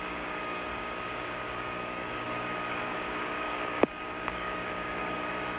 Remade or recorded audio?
remade